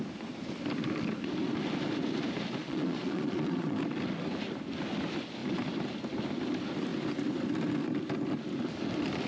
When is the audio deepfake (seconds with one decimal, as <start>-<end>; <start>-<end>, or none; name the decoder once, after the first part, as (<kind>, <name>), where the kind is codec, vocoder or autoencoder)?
2.6-3.8 (vocoder, Vocos)